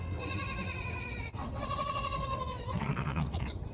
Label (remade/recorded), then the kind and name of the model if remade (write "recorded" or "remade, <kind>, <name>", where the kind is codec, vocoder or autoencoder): remade, vocoder, WaveNeXt